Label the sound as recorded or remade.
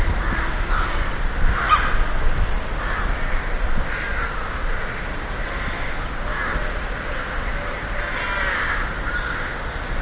recorded